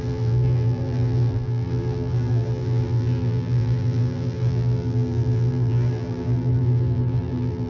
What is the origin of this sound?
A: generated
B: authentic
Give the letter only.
A